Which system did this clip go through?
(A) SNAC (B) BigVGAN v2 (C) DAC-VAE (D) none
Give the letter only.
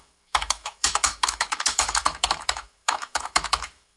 C